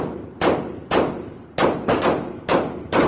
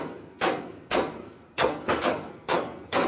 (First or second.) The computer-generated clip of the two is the second